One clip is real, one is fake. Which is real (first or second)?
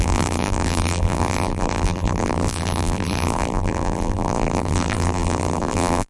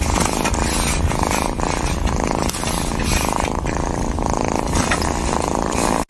second